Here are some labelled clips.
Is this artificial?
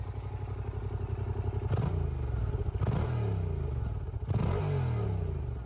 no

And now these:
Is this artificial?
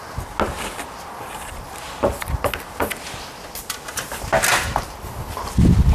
no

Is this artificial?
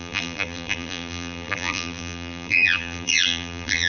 yes